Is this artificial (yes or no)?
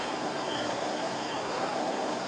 yes